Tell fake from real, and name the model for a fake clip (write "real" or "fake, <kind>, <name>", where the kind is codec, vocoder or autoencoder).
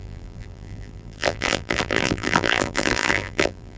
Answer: fake, vocoder, BigVGAN v2